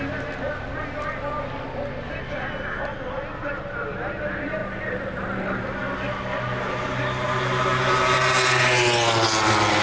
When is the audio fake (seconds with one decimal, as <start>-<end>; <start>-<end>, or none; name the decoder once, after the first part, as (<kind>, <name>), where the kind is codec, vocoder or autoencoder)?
none